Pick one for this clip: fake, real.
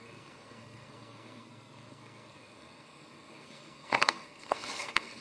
fake